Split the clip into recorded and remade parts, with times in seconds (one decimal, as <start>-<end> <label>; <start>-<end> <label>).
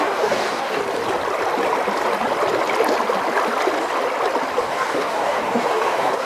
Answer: 0.0-0.8 remade; 0.8-4.6 recorded; 4.6-6.3 remade